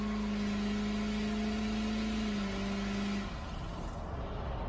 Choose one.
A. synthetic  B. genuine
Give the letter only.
B